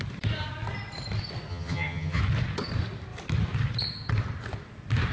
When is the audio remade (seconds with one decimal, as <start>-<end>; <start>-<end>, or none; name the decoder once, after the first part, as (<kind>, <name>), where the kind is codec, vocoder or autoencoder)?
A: 1.5-2.2 (vocoder, HiFi-GAN)